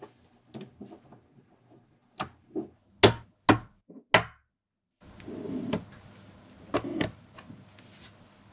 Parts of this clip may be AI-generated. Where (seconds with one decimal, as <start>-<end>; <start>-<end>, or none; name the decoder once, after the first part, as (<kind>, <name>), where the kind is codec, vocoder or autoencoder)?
none